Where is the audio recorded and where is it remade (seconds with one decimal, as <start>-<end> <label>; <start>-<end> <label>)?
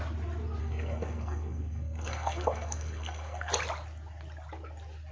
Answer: 0.0-0.6 recorded; 0.6-3.5 remade; 3.5-5.1 recorded